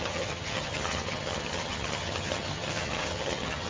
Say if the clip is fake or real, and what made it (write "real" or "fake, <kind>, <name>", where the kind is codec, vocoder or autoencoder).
fake, vocoder, HiFi-GAN